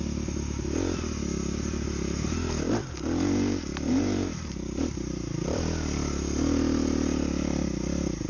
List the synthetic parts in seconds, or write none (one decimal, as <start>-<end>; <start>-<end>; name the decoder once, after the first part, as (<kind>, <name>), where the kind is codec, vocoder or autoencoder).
3.7-5.6 (vocoder, BigVGAN v2)